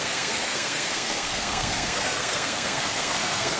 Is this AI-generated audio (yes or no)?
yes